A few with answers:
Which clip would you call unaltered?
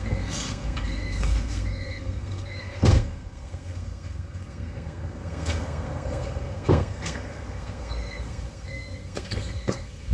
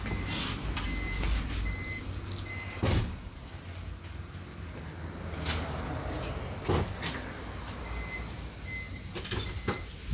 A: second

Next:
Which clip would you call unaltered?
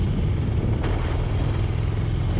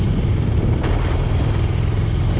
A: first